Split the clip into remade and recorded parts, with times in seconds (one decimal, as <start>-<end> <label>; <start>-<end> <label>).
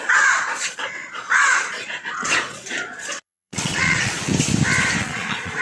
0.0-4.3 remade; 4.3-5.0 recorded; 5.0-5.6 remade